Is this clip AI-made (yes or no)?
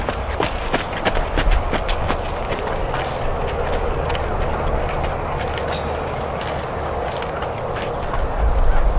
no